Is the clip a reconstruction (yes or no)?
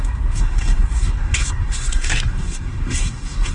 yes